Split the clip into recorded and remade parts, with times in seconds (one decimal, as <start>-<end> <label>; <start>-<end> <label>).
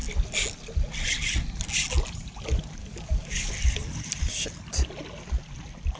0.0-2.8 recorded; 2.8-3.5 remade; 3.5-6.0 recorded